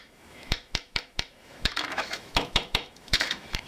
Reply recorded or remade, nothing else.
remade